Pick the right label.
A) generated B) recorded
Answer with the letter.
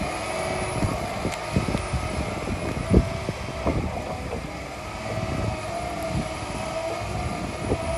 B